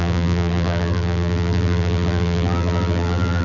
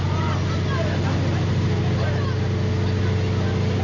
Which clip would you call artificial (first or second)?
first